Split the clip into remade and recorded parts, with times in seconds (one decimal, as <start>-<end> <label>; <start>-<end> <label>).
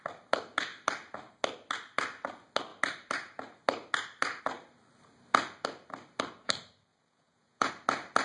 0.0-6.9 recorded; 6.9-7.7 remade; 7.7-8.2 recorded